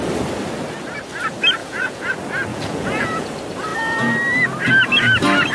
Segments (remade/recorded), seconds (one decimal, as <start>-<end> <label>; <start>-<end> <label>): 0.0-1.6 recorded; 1.6-2.1 remade; 2.1-2.5 recorded; 2.5-3.2 remade; 3.2-5.5 recorded